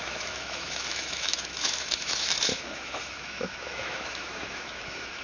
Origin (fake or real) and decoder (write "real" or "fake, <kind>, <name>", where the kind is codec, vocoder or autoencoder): fake, autoencoder, DAC-VAE